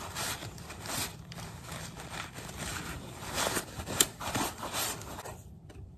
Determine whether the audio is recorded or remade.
remade